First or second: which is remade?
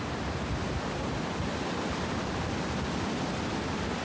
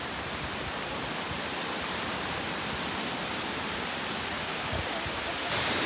second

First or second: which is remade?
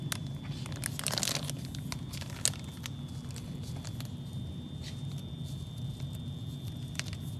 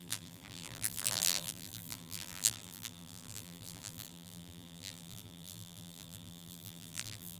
second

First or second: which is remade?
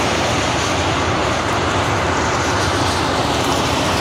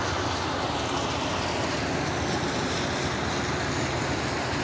first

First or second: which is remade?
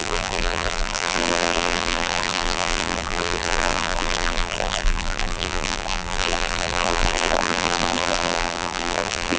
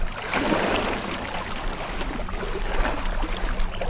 first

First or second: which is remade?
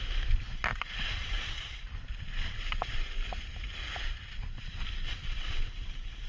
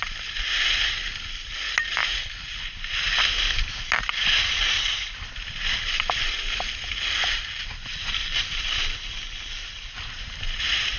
first